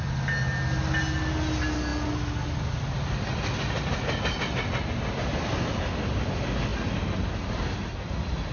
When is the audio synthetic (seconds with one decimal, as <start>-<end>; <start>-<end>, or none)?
none